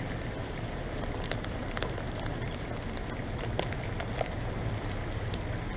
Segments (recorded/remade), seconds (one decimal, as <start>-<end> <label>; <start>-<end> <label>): 0.0-5.8 recorded